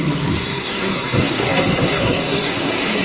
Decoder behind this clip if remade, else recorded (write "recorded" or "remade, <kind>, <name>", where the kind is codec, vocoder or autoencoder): remade, codec, SNAC